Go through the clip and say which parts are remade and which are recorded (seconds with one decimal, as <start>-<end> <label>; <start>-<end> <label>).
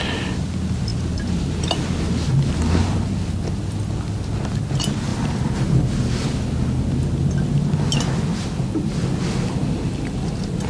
0.0-0.9 recorded; 0.9-2.0 remade; 2.0-5.1 recorded; 5.1-7.3 remade; 7.3-10.7 recorded